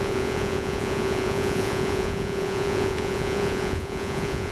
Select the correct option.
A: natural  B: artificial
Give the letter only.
B